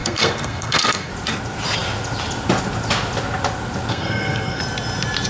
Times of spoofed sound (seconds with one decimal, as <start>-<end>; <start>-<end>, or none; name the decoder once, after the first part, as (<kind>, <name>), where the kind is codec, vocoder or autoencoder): 0.0-1.1 (codec, SNAC); 3.9-4.6